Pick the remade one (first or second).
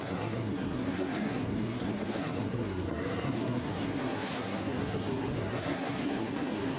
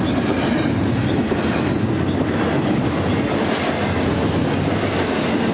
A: first